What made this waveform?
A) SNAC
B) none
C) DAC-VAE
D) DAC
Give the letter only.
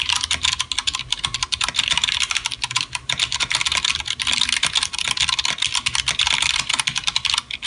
B